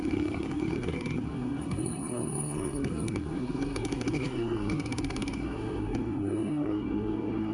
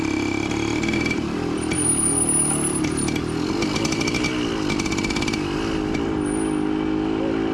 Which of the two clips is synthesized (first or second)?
first